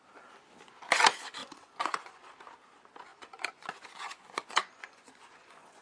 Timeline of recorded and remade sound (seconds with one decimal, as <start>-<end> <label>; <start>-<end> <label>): 0.0-1.4 recorded; 1.4-2.3 remade; 2.3-3.1 recorded; 3.1-5.8 remade

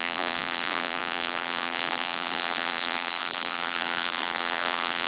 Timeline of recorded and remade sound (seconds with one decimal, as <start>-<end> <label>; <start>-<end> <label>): 0.0-5.1 remade

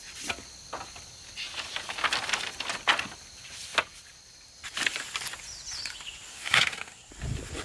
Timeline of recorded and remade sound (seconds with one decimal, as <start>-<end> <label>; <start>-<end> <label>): 0.0-6.3 recorded; 6.3-7.1 remade; 7.1-7.6 recorded

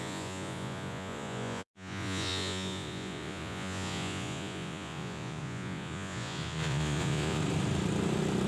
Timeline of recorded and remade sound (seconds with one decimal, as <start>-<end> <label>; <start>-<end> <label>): 0.0-7.4 remade; 7.4-8.5 recorded

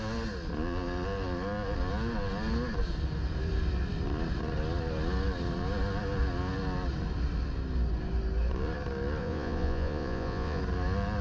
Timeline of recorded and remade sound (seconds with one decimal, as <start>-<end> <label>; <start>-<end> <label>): 0.0-9.2 recorded; 9.2-10.6 remade; 10.6-11.2 recorded

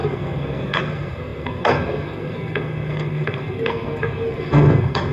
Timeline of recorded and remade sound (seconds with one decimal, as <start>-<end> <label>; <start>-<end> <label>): 0.0-5.1 remade

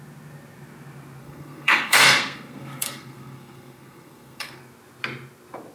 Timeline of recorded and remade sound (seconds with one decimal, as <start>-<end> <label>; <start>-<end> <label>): 0.0-1.2 recorded; 1.2-4.6 remade; 4.6-5.7 recorded

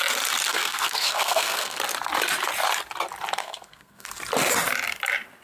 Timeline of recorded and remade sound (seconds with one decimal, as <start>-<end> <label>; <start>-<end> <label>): 0.0-0.5 recorded; 0.5-1.8 remade; 1.8-3.4 recorded; 3.4-4.1 remade; 4.1-5.4 recorded